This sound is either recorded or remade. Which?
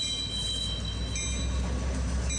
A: recorded